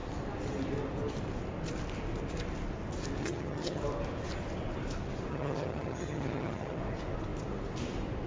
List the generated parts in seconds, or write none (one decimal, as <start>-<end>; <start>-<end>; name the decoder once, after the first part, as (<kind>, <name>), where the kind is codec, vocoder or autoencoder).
3.2-3.8 (vocoder, HiFi-GAN); 5.3-6.8